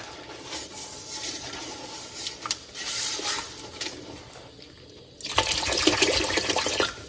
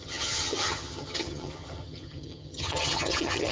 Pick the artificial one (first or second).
second